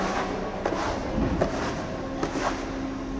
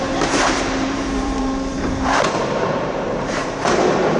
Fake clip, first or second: second